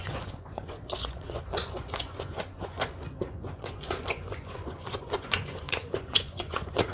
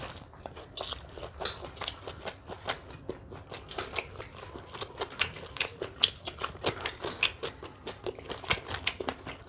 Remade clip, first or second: first